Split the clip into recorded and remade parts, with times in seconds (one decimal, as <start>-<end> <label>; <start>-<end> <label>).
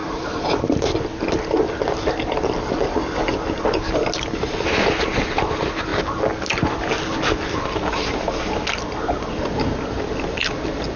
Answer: 0.0-11.0 recorded